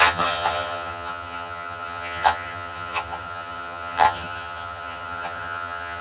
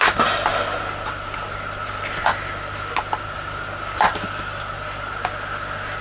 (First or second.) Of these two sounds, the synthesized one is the first